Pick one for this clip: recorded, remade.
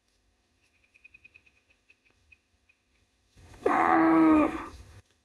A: remade